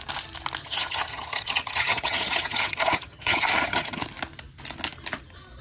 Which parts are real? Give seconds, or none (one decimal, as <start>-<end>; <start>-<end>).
0.0-0.6; 4.0-5.6